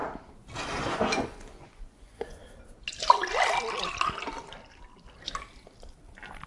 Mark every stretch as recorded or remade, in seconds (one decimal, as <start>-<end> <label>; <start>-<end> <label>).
0.0-0.8 recorded; 0.8-2.4 remade; 2.4-6.5 recorded